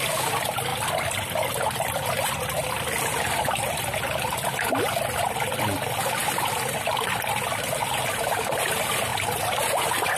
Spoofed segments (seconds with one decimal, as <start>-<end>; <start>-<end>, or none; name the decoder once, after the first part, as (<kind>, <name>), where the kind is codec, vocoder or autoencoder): none